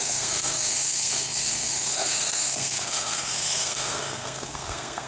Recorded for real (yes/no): no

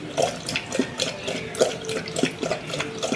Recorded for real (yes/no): yes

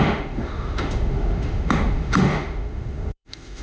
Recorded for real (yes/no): no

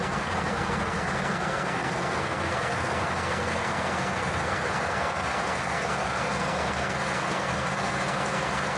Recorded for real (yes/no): no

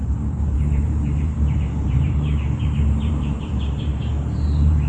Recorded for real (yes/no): no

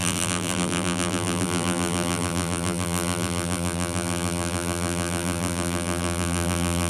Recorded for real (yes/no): no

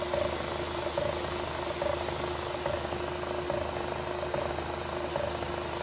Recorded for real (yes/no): yes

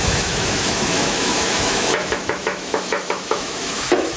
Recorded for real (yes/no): no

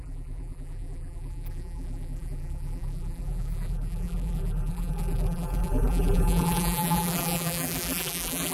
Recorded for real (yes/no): no